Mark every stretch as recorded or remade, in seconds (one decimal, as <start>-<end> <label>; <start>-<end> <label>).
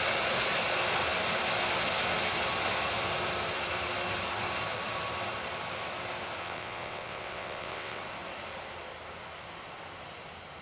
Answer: 0.0-6.4 recorded; 6.4-8.0 remade; 8.0-10.6 recorded